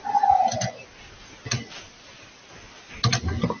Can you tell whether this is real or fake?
real